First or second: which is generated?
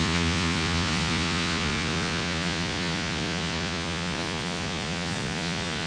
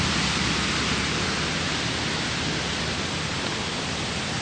first